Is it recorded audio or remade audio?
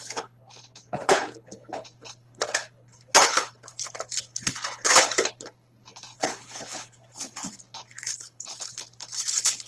remade